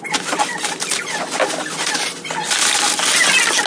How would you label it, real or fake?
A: real